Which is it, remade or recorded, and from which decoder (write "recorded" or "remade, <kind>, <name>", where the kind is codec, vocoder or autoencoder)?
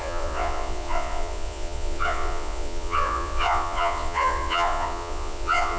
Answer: remade, vocoder, Vocos